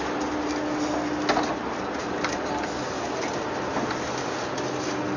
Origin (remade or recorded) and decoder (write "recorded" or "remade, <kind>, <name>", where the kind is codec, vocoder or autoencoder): recorded